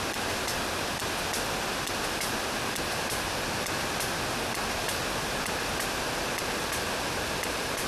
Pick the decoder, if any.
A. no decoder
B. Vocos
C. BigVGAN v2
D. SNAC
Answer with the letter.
A